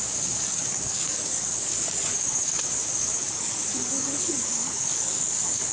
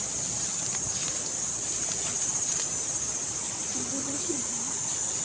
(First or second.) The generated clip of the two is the first